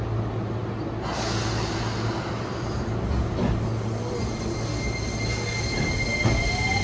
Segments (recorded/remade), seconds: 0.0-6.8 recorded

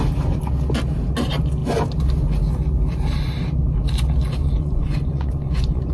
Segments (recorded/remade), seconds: 0.0-4.4 recorded; 4.4-5.9 remade

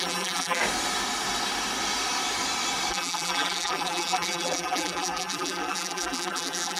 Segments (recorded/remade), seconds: 0.0-0.6 remade; 0.6-2.9 recorded; 2.9-6.8 remade

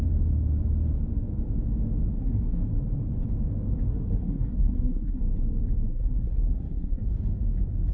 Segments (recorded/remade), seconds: 0.0-2.2 recorded; 2.2-2.7 remade; 2.7-3.9 recorded; 3.9-5.2 remade; 5.2-5.9 recorded; 5.9-7.0 remade; 7.0-7.9 recorded

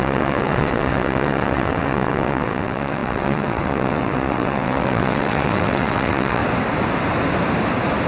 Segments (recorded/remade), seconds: 0.0-6.4 remade; 6.4-8.1 recorded

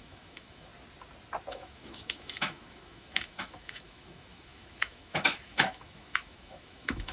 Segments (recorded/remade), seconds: 0.0-0.7 remade; 0.7-1.5 recorded; 1.5-7.1 remade